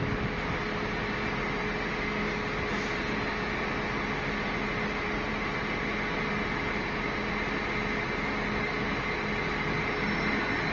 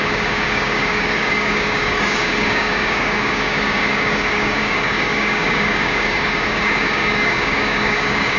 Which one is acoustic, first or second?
first